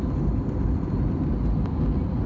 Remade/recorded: recorded